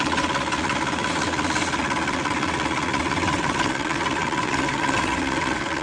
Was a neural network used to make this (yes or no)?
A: yes